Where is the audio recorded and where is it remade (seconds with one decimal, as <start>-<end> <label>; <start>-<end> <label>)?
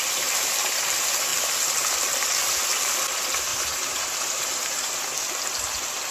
0.0-3.5 recorded; 3.5-5.0 remade; 5.0-6.1 recorded